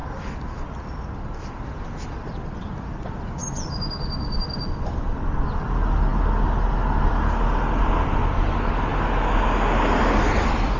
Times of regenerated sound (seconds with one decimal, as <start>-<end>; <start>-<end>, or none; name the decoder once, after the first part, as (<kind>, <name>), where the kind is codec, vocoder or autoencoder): none